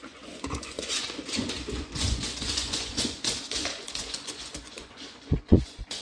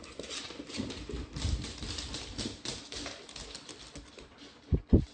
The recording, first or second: second